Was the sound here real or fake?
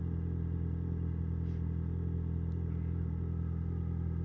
real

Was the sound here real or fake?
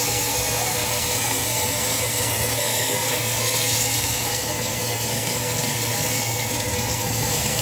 fake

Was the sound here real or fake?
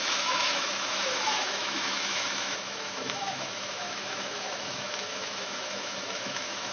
fake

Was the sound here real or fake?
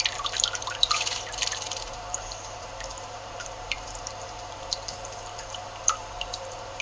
fake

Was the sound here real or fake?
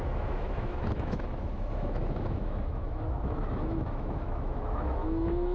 fake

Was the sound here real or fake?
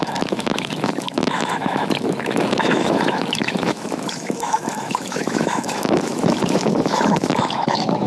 fake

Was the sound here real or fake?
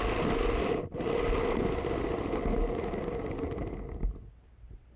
real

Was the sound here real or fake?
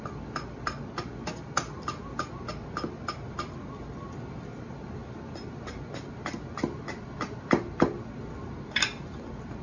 real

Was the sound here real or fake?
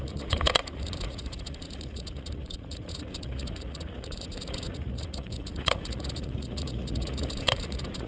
fake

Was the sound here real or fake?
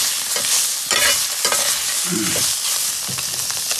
real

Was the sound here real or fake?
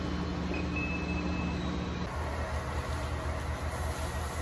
real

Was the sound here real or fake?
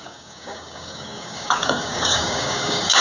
fake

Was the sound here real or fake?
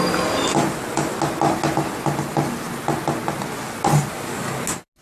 real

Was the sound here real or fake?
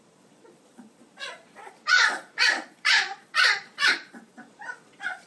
fake